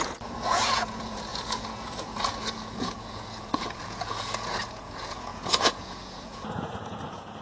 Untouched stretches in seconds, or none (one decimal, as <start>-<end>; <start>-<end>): none